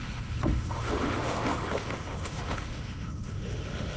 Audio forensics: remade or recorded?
remade